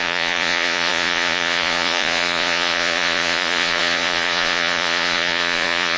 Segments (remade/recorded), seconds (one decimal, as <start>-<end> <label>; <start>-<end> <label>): 0.0-6.0 remade